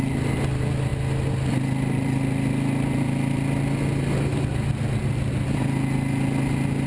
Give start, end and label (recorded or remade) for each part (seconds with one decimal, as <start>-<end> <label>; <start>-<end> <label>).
0.0-6.9 recorded